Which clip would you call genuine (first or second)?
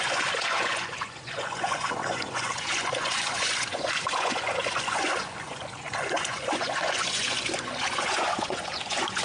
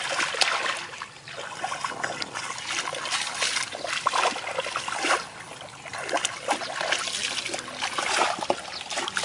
second